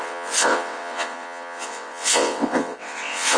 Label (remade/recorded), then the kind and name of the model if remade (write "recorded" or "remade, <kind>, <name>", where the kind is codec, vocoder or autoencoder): remade, vocoder, WaveNeXt